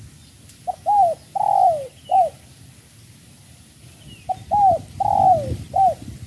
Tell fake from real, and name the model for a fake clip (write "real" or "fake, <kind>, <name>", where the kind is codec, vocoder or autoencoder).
real